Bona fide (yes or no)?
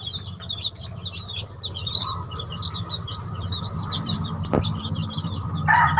no